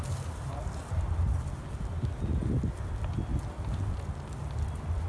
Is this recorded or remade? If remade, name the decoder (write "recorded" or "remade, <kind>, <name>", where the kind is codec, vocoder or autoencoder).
recorded